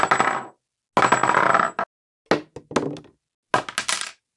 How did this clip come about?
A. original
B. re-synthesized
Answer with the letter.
A